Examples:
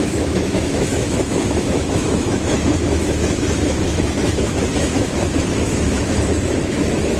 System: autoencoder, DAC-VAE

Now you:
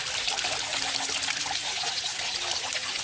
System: none